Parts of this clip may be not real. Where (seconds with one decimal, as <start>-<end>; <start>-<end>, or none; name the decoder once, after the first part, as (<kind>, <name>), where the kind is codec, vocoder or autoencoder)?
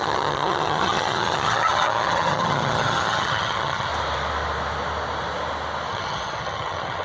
0.0-3.9 (vocoder, HiFi-GAN); 5.9-7.0